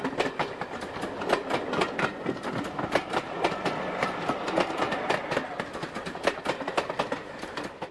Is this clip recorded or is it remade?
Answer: recorded